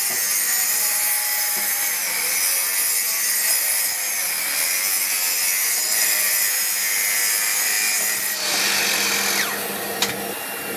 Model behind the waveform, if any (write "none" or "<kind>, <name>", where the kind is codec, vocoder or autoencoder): none